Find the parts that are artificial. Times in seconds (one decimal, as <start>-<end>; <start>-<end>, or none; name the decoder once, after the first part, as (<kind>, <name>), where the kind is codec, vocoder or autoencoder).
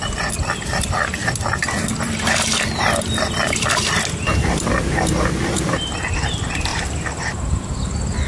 1.2-6.2 (vocoder, BigVGAN v2); 6.7-7.6